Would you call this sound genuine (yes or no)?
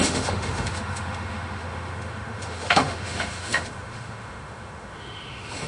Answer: no